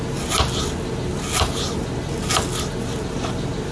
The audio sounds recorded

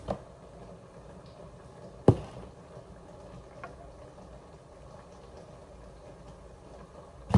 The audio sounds recorded